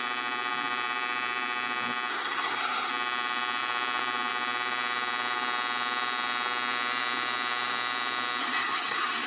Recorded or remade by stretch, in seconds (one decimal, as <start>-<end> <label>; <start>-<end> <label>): 0.0-2.1 recorded; 2.1-2.9 remade; 2.9-8.4 recorded; 8.4-9.3 remade